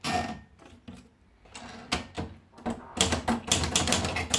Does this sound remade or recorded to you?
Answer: recorded